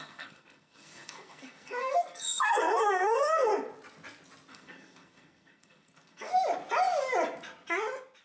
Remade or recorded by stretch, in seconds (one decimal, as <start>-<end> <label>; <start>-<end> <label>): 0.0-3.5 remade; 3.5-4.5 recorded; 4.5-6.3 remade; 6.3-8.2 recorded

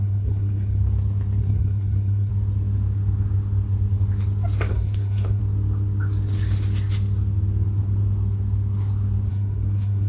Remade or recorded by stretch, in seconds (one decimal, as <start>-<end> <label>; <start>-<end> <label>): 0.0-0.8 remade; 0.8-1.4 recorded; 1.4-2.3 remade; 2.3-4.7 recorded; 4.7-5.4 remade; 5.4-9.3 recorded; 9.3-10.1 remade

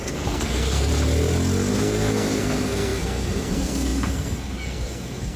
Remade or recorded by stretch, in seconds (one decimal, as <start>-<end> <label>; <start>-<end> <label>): 0.0-0.9 remade; 0.9-1.7 recorded; 1.7-5.4 remade

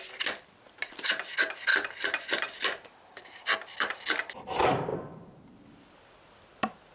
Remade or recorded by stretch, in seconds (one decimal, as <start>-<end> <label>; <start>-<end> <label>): 0.0-6.9 recorded

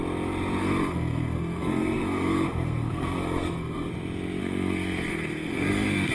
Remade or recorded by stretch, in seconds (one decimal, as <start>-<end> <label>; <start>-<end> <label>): 0.0-0.6 recorded; 0.6-3.9 remade; 3.9-4.4 recorded; 4.4-6.1 remade